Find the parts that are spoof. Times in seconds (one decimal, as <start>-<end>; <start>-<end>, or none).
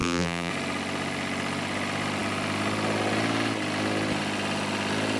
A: 0.0-0.5